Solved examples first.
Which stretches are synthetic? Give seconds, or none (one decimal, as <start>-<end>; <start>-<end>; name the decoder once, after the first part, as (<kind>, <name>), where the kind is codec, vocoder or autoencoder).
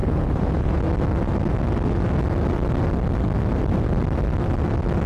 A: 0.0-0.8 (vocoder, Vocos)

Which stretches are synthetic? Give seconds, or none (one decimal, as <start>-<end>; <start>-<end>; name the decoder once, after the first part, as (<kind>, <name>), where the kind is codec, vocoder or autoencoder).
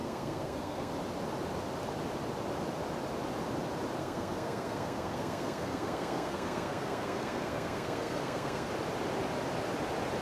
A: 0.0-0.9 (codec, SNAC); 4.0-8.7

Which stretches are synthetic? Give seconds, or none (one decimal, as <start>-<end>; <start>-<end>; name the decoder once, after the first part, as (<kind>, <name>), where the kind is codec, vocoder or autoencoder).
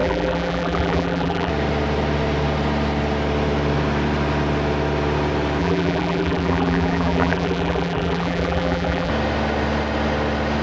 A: 0.0-1.5 (vocoder, BigVGAN v2); 5.6-9.1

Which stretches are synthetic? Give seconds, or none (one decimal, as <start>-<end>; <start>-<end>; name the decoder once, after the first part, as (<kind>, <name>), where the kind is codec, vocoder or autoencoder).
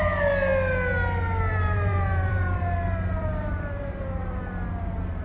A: 0.0-0.5 (vocoder, BigVGAN v2); 1.5-5.2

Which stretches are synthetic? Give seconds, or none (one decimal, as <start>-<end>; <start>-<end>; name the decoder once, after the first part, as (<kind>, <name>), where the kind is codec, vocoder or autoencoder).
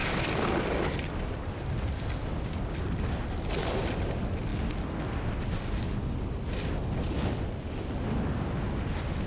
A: none